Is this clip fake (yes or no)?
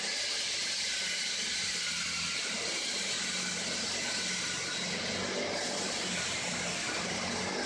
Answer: no